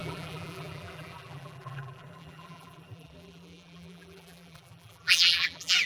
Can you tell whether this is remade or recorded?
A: remade